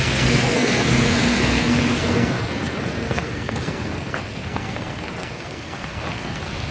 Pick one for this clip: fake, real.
fake